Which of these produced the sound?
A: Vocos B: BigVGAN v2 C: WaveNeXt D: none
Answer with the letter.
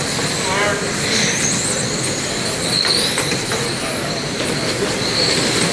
D